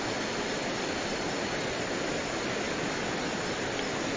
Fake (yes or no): no